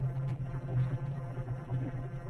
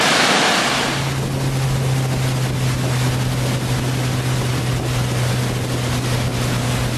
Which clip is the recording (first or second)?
second